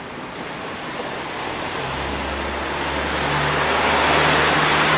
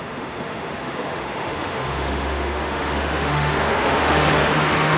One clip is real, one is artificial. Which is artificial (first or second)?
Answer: second